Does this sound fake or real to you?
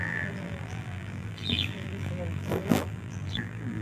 fake